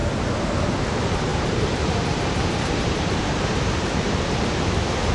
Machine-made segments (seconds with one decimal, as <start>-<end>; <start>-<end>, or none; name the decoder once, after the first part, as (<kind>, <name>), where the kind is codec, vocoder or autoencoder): 0.8-5.1 (vocoder, BigVGAN v2)

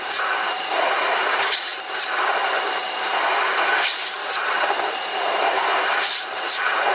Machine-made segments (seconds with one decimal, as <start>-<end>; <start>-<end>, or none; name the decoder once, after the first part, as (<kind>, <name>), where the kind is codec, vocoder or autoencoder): 0.0-6.9 (vocoder, BigVGAN v2)

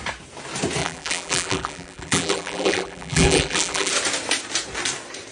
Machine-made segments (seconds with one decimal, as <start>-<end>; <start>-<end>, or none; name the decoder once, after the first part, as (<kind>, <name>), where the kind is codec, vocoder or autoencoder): 0.8-3.9 (vocoder, BigVGAN v2)

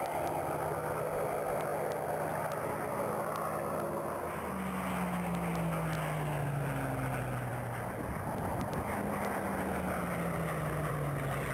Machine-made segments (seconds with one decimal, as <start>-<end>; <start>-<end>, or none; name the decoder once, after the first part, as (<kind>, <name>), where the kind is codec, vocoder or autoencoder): none

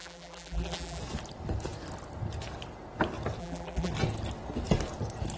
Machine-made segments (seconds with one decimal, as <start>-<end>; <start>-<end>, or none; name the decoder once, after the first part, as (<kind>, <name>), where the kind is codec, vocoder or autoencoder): 0.0-1.0 (vocoder, BigVGAN v2); 3.4-3.9

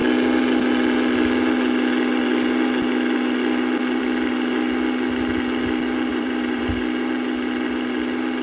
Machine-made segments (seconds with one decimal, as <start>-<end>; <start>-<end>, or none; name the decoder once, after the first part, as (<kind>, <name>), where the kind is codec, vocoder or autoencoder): 6.1-6.6 (vocoder, BigVGAN v2)

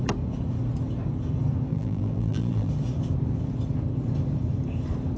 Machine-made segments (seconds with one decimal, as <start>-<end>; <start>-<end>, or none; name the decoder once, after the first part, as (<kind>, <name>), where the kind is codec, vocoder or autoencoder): 1.7-2.7 (vocoder, BigVGAN v2)

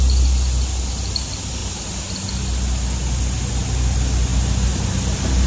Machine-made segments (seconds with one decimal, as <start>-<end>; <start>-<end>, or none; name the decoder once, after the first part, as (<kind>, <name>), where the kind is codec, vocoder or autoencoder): none